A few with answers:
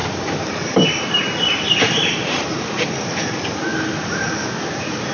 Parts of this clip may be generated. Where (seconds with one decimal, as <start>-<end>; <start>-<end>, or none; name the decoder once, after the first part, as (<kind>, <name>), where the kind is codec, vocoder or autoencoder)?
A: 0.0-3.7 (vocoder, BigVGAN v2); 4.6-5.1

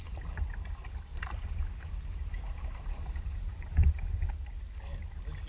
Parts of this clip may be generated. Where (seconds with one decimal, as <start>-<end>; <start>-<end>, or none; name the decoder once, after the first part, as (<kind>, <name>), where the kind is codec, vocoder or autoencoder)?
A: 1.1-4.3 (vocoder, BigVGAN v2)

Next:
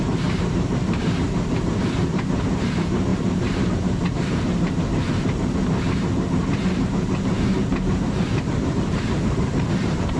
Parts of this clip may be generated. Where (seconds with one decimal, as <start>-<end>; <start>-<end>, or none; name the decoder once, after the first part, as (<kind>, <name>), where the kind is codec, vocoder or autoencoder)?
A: 0.0-5.4 (vocoder, BigVGAN v2); 6.7-10.2

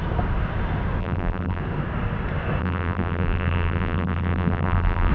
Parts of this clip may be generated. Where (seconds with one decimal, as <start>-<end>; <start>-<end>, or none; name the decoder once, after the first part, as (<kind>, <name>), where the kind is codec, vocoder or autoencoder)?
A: 1.0-1.6 (vocoder, BigVGAN v2); 2.6-5.1